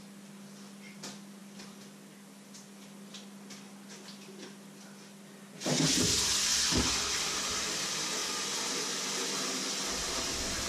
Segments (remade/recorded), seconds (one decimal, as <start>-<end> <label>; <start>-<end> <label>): 0.0-10.7 recorded